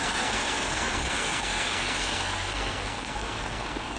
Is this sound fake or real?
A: fake